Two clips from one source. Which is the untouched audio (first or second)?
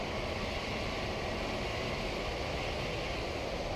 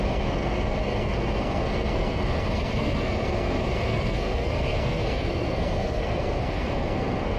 first